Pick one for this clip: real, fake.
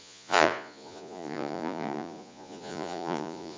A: fake